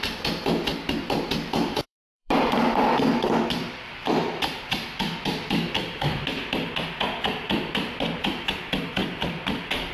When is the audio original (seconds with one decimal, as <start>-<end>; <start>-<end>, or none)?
0.0-0.7; 4.6-9.0